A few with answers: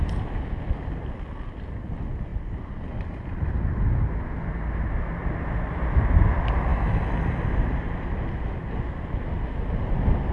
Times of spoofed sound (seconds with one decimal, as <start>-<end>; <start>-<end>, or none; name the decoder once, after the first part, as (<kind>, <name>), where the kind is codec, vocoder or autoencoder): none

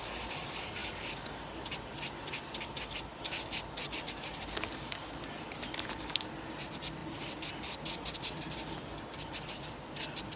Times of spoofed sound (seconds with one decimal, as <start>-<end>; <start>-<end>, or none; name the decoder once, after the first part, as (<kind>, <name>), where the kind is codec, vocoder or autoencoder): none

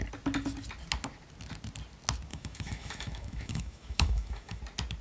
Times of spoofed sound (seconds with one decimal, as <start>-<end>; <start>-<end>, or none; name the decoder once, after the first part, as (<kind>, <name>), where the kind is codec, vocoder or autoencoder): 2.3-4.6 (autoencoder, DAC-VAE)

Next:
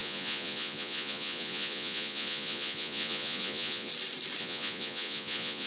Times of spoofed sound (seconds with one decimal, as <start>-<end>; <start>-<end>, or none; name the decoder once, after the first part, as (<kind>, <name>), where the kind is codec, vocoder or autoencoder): 0.0-3.9 (vocoder, Vocos); 4.4-5.7

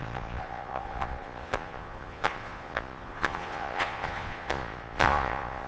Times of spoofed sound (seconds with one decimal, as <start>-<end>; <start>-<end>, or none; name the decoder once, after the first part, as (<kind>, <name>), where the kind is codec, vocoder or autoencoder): 0.0-5.7 (vocoder, Vocos)

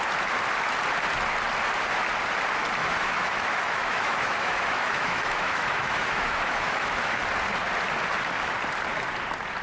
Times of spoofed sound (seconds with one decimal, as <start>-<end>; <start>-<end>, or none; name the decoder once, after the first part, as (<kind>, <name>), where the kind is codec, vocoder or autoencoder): 2.8-7.2 (autoencoder, DAC-VAE)

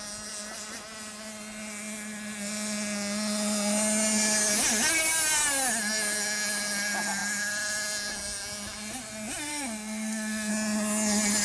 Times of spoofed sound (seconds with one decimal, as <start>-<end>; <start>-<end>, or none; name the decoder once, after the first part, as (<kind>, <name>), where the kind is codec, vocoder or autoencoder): 9.5-10.5 (codec, SNAC)